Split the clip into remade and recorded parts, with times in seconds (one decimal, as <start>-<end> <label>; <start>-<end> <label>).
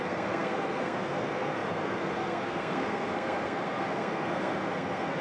0.0-5.2 remade